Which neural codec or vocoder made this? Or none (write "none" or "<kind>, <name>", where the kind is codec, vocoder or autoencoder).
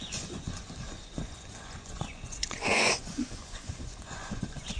vocoder, Vocos